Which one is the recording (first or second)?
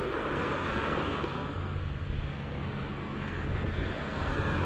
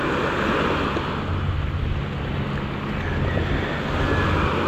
second